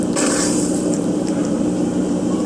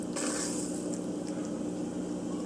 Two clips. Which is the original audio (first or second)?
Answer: second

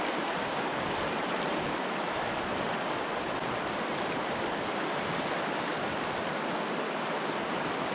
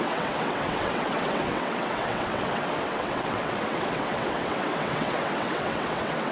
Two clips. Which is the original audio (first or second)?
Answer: first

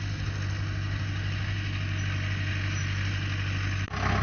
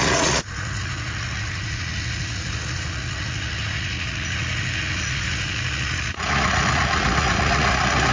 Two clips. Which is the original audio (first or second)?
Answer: first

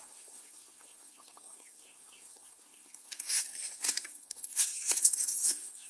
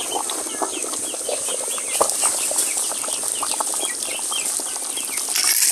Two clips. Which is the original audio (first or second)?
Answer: second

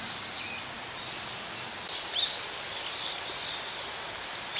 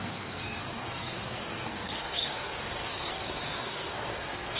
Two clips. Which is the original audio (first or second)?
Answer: first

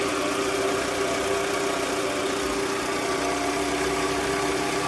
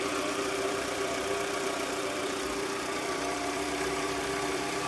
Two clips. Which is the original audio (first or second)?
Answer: first